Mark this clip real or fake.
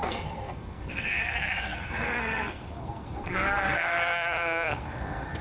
fake